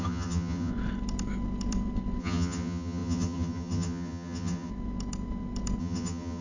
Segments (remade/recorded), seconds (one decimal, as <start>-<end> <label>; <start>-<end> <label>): 0.0-0.7 remade; 0.7-2.2 recorded; 2.2-4.7 remade; 4.7-5.8 recorded; 5.8-6.4 remade